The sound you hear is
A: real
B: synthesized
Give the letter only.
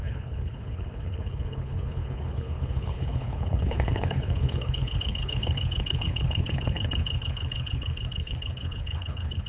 B